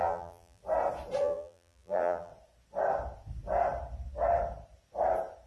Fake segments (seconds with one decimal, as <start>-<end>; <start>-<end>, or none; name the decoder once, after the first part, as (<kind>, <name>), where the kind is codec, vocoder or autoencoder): 0.0-0.6 (vocoder, BigVGAN v2); 1.2-2.3